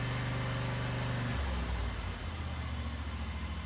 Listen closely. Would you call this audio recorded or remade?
recorded